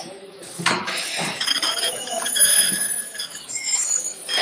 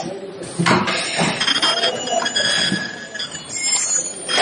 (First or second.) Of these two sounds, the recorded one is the second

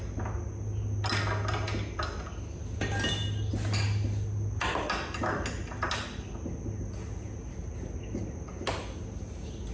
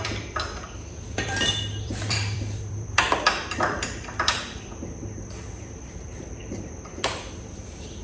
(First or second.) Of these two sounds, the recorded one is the first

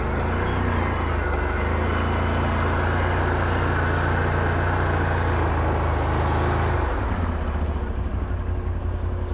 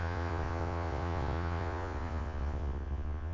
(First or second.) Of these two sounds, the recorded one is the first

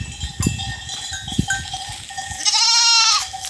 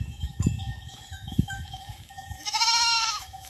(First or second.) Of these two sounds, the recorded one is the first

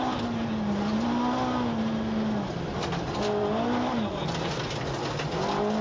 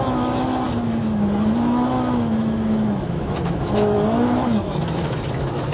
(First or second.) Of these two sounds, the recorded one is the first